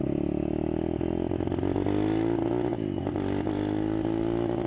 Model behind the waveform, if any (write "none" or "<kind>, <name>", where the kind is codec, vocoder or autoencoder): none